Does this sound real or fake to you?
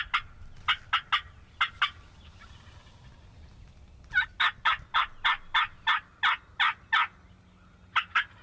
real